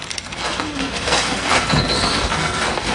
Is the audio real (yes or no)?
no